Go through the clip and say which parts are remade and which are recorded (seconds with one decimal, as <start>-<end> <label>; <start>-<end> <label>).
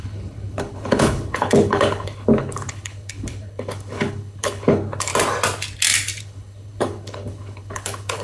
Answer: 0.0-5.1 remade; 5.1-6.2 recorded; 6.2-8.2 remade